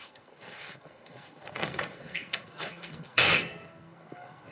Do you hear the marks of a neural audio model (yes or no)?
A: yes